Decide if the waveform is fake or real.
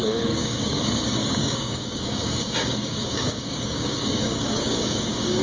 fake